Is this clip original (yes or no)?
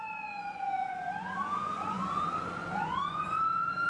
no